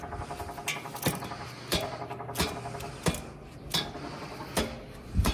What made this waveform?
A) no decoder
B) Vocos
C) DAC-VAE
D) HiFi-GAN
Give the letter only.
A